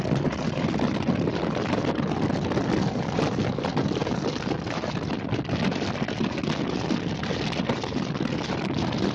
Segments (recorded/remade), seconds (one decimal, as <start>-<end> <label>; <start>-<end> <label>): 0.0-9.1 recorded